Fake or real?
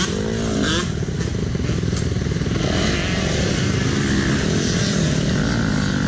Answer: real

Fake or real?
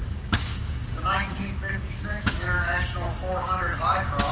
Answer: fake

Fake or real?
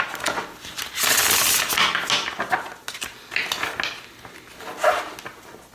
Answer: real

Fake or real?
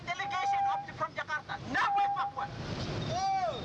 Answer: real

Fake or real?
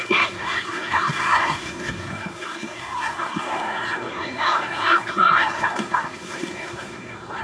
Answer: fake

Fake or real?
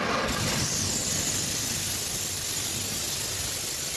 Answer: real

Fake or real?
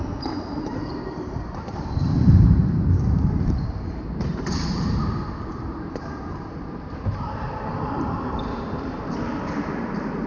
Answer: fake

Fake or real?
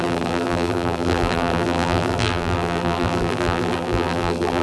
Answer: fake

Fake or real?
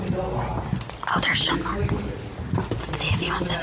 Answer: real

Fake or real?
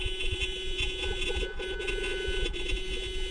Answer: fake